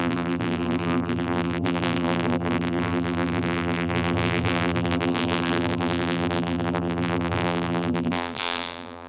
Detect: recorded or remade remade